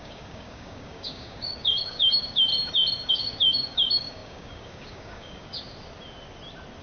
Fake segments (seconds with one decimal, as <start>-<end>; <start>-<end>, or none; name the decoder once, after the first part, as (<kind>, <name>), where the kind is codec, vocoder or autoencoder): 0.0-2.5 (codec, DAC); 3.1-5.5